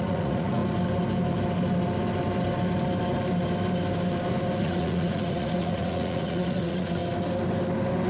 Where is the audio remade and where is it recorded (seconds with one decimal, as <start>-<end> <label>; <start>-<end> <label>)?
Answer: 0.0-0.6 remade; 0.6-4.6 recorded; 4.6-7.0 remade; 7.0-8.1 recorded